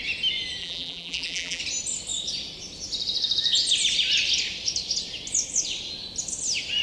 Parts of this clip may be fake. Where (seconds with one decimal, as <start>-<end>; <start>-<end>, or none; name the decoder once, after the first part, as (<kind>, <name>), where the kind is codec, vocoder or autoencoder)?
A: 0.6-1.6 (vocoder, BigVGAN v2)